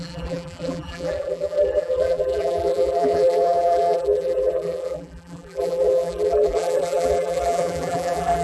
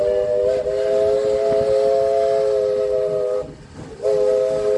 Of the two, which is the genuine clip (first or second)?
second